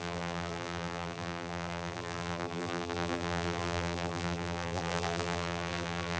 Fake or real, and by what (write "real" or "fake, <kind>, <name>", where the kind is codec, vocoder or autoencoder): fake, vocoder, BigVGAN v2